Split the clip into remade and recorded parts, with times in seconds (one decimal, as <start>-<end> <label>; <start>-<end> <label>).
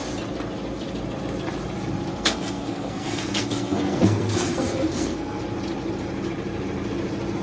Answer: 0.0-2.1 recorded; 2.1-5.4 remade; 5.4-7.4 recorded